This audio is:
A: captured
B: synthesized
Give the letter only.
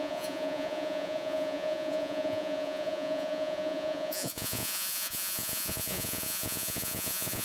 B